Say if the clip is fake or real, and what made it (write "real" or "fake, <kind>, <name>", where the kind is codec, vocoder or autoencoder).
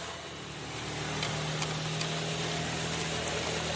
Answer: real